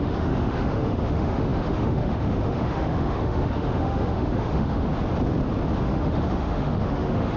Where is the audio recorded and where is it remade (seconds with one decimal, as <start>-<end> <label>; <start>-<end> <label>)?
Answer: 0.0-4.9 remade; 4.9-5.8 recorded; 5.8-7.4 remade